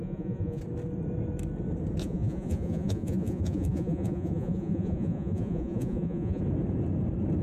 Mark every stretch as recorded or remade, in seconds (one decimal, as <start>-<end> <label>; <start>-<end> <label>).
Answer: 0.0-0.6 remade; 0.6-2.0 recorded; 2.0-6.4 remade; 6.4-7.4 recorded

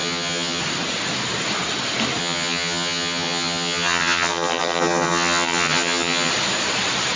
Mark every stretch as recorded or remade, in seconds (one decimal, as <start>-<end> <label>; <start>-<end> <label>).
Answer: 0.0-0.6 remade; 0.6-2.2 recorded; 2.2-6.3 remade; 6.3-7.2 recorded